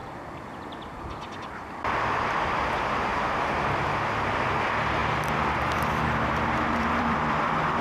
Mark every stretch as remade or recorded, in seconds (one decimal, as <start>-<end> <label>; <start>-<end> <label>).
0.0-3.1 remade; 3.1-3.9 recorded; 3.9-7.8 remade